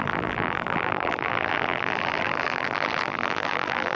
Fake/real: fake